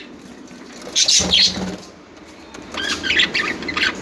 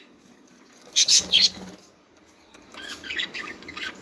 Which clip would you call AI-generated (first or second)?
second